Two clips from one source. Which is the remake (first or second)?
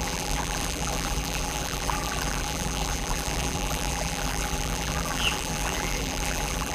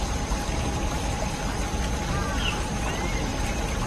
first